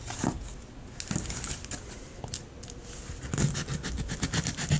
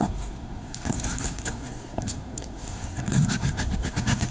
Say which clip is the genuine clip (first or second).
first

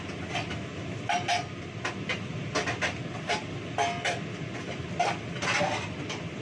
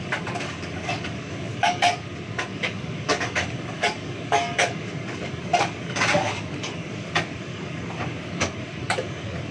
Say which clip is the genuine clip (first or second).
first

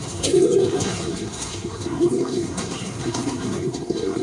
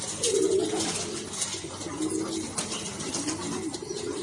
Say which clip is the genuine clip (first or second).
second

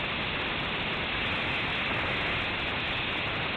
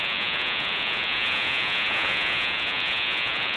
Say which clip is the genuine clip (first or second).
first